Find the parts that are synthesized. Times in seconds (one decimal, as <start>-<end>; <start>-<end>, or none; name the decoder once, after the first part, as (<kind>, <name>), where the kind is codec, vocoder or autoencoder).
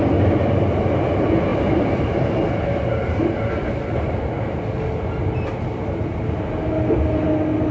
none